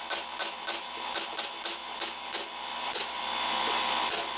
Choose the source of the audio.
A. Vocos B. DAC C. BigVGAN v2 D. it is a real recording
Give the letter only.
D